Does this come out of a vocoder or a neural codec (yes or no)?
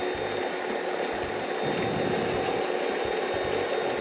no